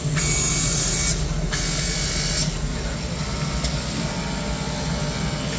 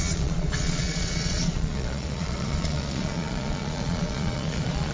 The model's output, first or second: second